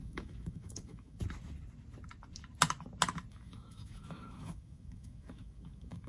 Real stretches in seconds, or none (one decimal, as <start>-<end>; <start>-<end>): 1.2-3.3